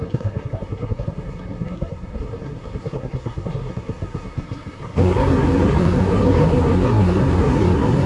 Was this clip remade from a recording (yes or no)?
yes